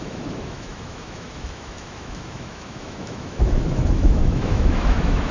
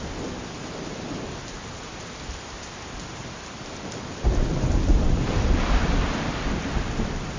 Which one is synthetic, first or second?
first